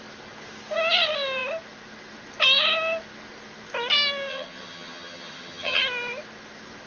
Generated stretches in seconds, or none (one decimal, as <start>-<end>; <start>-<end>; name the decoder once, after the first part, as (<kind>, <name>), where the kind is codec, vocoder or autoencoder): 4.3-5.8 (vocoder, HiFi-GAN)